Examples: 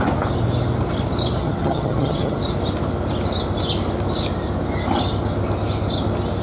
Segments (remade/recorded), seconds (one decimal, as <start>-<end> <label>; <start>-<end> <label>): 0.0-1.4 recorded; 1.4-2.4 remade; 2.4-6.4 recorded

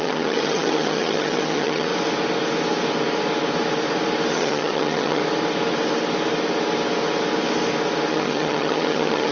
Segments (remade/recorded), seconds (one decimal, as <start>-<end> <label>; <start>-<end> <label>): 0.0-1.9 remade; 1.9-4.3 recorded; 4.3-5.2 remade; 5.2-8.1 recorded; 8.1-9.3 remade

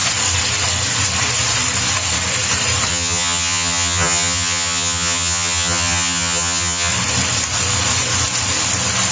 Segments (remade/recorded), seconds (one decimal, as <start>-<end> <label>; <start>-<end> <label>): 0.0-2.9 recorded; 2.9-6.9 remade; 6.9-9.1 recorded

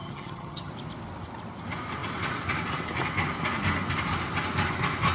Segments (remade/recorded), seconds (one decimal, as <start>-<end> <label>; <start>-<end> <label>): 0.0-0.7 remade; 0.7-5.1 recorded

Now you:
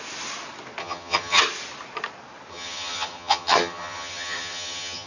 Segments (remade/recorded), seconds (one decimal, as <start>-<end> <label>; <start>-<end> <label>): 0.0-0.8 recorded; 0.8-1.4 remade; 1.4-2.5 recorded; 2.5-5.1 remade

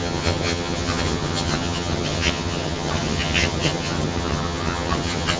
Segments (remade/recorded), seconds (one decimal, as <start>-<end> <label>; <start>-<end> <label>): 0.0-5.4 remade

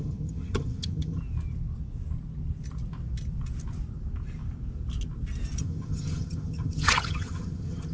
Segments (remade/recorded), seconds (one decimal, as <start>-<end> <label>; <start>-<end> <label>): 0.0-1.2 remade; 1.2-5.6 recorded; 5.6-7.9 remade

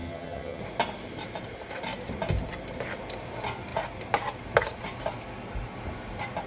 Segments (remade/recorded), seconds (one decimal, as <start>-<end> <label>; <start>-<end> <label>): 0.0-0.6 remade; 0.6-6.5 recorded